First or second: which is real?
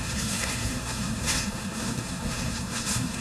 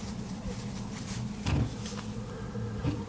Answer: second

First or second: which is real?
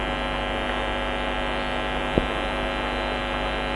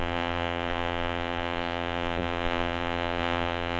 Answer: first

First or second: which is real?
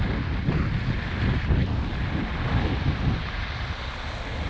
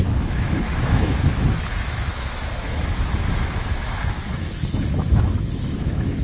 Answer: first